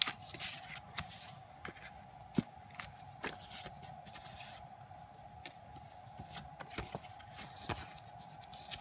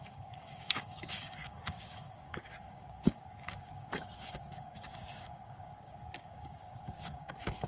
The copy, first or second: second